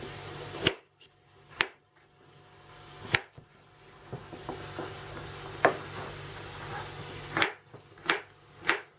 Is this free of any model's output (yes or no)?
yes